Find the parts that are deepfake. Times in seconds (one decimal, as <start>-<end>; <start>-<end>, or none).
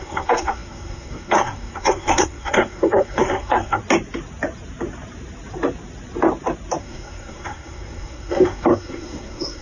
0.0-3.8; 6.8-9.6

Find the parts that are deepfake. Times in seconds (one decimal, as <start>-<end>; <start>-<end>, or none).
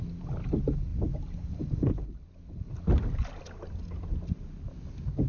none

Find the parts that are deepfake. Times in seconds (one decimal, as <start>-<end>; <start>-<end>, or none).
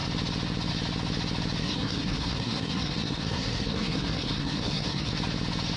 1.6-5.1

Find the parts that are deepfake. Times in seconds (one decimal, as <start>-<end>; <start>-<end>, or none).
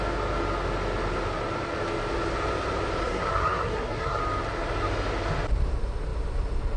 3.0-4.2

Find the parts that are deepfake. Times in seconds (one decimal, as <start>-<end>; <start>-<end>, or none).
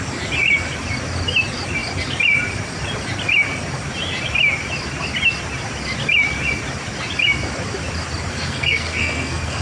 8.3-9.6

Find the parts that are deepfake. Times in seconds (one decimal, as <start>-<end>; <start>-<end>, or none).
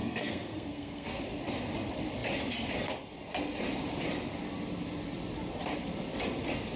0.0-1.2